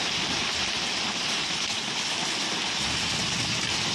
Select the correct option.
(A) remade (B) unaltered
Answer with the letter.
B